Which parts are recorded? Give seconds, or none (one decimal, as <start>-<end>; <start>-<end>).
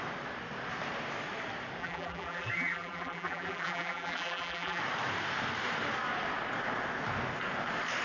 0.0-1.8; 4.8-8.0